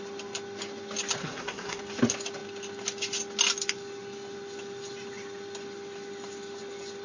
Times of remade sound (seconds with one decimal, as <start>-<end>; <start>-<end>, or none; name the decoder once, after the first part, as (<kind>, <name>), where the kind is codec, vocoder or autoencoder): 1.2-1.8 (codec, SNAC)